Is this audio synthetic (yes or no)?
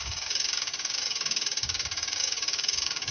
yes